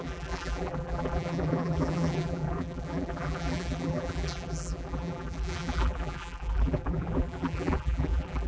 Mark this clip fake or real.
fake